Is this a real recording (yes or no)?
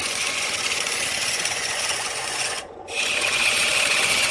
no